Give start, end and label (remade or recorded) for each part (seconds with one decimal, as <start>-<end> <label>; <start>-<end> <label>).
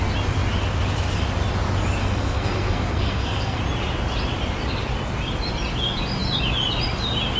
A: 0.0-2.0 recorded; 2.0-3.6 remade; 3.6-7.4 recorded